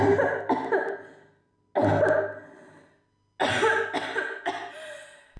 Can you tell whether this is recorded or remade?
recorded